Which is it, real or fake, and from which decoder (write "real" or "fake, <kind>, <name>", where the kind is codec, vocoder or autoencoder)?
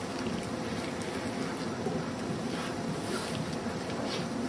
real